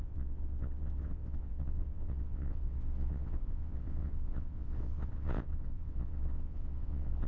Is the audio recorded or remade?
remade